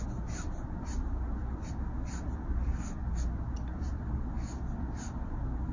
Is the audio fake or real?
real